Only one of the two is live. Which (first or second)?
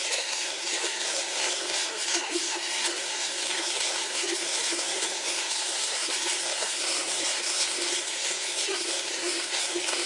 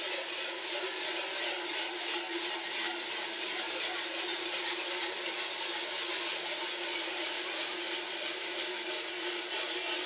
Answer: second